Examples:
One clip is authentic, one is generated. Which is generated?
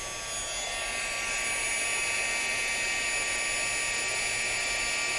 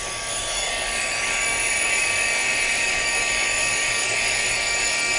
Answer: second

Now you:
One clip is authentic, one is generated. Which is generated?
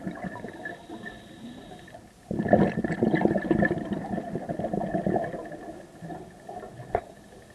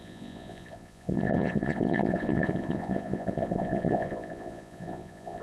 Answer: second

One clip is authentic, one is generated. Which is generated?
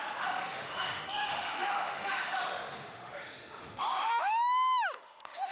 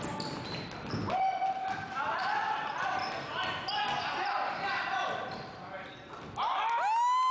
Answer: first